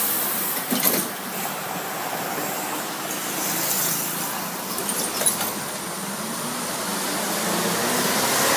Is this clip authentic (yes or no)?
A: yes